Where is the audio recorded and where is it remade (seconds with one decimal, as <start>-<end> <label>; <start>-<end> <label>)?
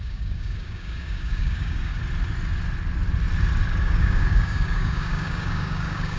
0.0-1.9 remade; 1.9-3.8 recorded; 3.8-6.2 remade